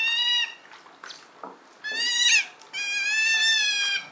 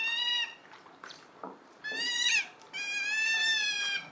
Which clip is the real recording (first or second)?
first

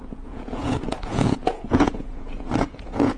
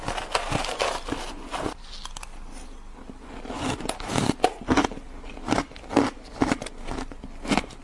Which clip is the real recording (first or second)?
second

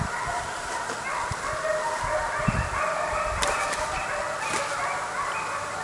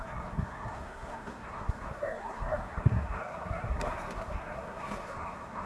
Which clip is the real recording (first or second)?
first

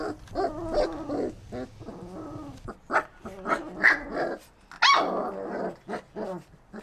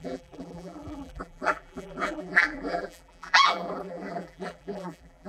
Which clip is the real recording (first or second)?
first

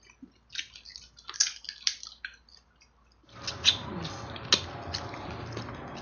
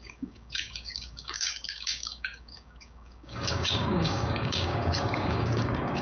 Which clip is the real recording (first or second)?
first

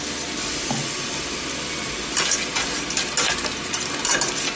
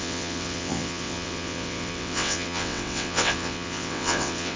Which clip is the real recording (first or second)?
first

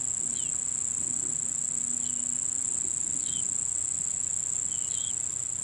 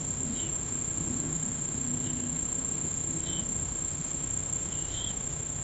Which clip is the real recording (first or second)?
first